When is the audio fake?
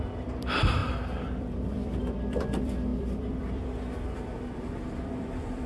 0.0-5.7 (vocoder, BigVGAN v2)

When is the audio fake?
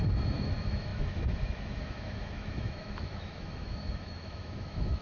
0.0-5.0 (autoencoder, DAC-VAE)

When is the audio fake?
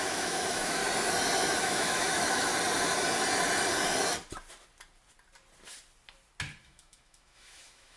0.0-0.8 (autoencoder, DAC-VAE); 1.6-2.5; 6.6-8.0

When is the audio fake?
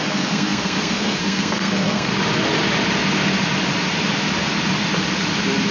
0.0-2.1 (codec, SNAC)